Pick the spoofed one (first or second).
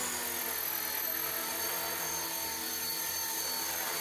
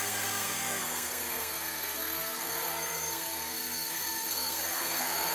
second